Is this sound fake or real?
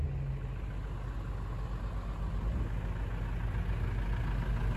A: real